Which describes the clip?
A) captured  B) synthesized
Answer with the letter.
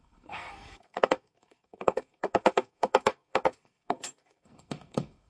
B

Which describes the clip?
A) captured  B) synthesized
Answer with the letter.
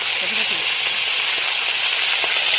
A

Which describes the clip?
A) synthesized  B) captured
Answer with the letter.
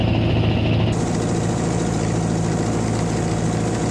B